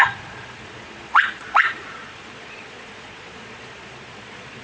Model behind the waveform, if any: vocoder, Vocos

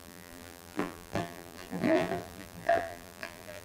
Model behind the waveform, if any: vocoder, BigVGAN v2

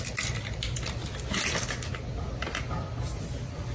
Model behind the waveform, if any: none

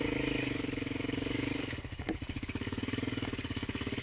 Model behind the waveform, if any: codec, DAC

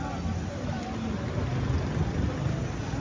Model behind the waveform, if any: none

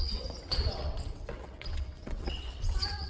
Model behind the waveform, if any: vocoder, WaveNeXt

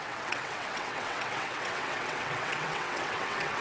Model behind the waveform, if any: vocoder, WaveNeXt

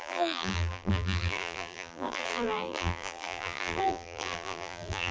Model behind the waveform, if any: vocoder, BigVGAN v2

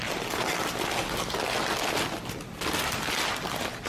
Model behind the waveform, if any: none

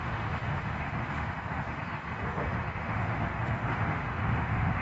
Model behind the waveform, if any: autoencoder, DAC-VAE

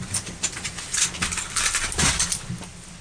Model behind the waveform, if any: vocoder, BigVGAN v2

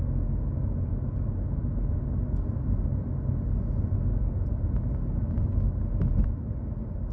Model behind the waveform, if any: none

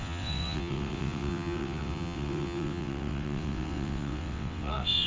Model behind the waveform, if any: vocoder, WaveNeXt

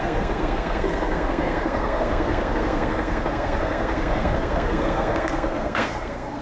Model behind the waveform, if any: codec, SNAC